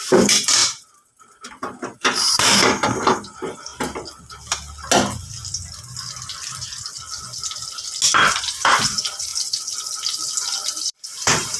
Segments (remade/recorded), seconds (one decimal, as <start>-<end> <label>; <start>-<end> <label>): 0.0-3.7 remade; 3.7-8.2 recorded; 8.2-9.3 remade; 9.3-10.8 recorded; 10.8-11.6 remade

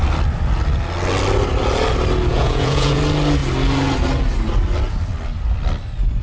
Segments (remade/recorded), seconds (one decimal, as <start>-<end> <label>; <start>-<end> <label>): 0.0-2.3 recorded; 2.3-3.0 remade; 3.0-6.2 recorded

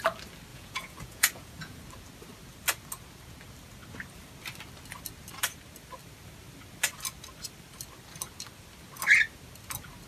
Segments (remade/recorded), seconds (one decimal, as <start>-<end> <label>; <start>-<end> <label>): 0.0-0.5 recorded; 0.5-1.8 remade; 1.8-10.1 recorded